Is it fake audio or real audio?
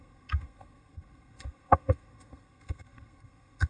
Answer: fake